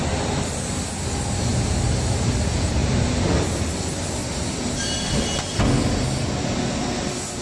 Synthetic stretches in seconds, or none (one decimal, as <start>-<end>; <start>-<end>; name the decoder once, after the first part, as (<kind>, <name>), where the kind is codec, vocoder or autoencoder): 1.5-2.3 (vocoder, BigVGAN v2); 2.8-3.7; 4.2-5.1